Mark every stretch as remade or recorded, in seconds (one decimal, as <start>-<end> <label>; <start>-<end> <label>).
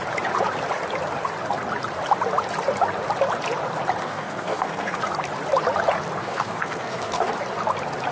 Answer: 0.0-4.0 recorded; 4.0-5.0 remade; 5.0-6.2 recorded; 6.2-7.3 remade; 7.3-8.1 recorded